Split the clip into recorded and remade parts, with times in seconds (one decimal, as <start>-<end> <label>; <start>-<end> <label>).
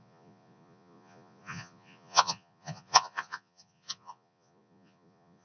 0.0-5.4 remade